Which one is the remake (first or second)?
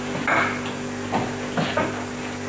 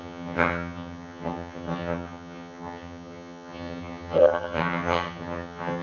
second